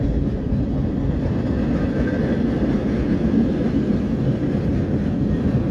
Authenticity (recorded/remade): recorded